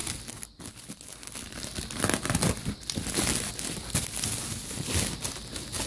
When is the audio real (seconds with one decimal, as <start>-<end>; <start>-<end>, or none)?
0.0-5.9

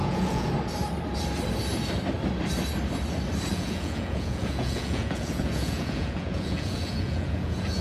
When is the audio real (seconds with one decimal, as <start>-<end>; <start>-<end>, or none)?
0.5-3.5

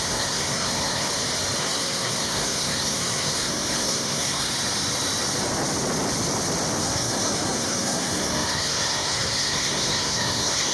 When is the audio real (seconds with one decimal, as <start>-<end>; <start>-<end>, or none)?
1.1-1.6; 4.5-6.8

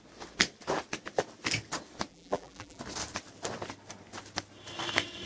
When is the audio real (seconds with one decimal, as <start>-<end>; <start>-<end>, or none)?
0.0-2.1; 2.8-5.3

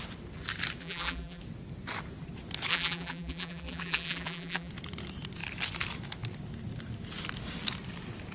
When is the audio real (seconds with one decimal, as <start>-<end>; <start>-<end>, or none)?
0.0-0.8; 1.4-2.7; 4.7-8.3